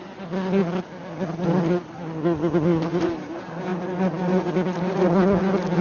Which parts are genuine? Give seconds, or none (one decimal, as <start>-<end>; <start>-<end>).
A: 0.0-5.8